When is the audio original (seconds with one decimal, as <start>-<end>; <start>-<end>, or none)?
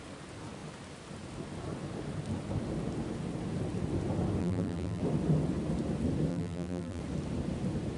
0.0-4.4; 5.0-6.3; 7.0-8.0